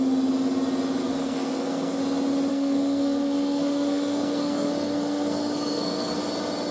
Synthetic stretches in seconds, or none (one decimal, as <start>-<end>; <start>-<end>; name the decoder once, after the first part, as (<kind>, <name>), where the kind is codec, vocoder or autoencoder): 1.0-2.0 (codec, SNAC); 2.5-6.2